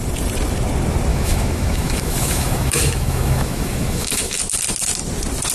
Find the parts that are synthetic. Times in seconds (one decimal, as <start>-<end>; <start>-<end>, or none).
1.1-4.4